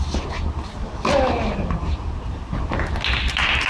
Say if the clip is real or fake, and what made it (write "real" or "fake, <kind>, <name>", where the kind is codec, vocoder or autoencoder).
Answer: real